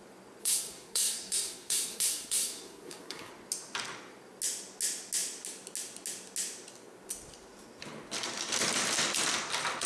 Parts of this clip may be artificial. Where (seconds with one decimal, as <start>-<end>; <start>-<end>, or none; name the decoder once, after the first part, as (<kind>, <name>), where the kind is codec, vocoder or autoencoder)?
0.4-3.3 (codec, SNAC)